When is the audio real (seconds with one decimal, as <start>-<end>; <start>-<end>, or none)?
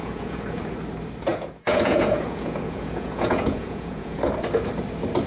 0.6-1.3; 4.2-5.3